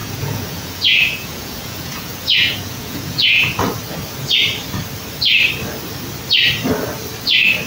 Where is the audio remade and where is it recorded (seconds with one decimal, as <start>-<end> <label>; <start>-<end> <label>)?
0.0-3.6 remade; 3.6-7.7 recorded

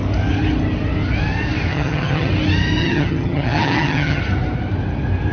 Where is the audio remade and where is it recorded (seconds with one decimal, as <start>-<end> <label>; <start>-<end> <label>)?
0.0-1.7 recorded; 1.7-2.3 remade; 2.3-2.8 recorded; 2.8-4.2 remade; 4.2-5.3 recorded

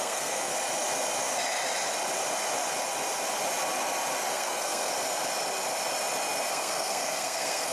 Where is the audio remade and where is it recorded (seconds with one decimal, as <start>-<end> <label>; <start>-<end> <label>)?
0.0-0.5 remade; 0.5-4.3 recorded; 4.3-4.9 remade; 4.9-6.5 recorded; 6.5-7.7 remade

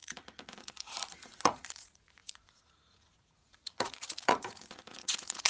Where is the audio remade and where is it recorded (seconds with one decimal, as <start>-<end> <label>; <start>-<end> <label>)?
0.0-5.5 remade

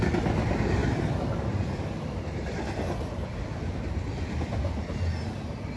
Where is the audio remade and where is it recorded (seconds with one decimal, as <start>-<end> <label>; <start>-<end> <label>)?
0.0-0.8 recorded; 0.8-3.8 remade; 3.8-5.8 recorded

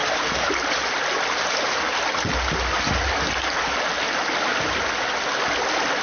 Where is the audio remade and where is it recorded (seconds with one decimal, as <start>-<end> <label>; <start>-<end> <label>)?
0.0-6.0 recorded

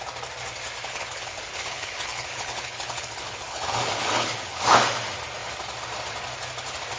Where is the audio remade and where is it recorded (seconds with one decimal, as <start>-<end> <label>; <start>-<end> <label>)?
0.0-0.8 recorded; 0.8-4.8 remade; 4.8-7.0 recorded

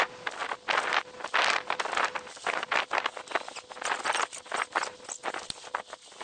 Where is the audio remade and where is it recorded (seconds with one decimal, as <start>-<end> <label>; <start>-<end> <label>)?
0.0-6.2 recorded